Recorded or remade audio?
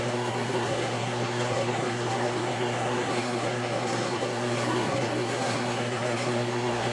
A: remade